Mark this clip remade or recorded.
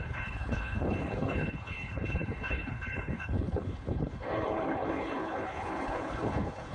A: remade